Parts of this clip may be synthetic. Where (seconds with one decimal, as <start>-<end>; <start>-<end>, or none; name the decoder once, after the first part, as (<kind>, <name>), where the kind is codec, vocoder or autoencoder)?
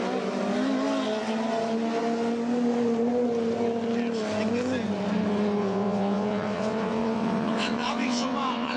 5.6-8.8 (vocoder, WaveNeXt)